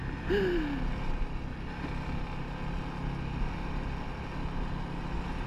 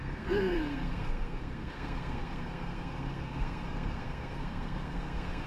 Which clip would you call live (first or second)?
first